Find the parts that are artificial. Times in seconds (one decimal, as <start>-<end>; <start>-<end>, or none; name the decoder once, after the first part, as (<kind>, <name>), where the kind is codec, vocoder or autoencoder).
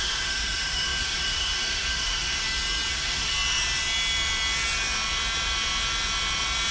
0.0-2.4 (autoencoder, DAC-VAE); 2.9-3.3